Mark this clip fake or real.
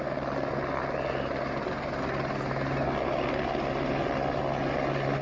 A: real